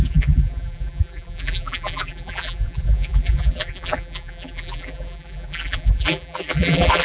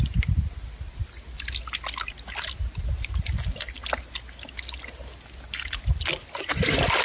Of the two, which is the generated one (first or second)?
first